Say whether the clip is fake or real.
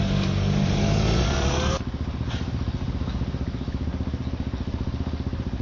real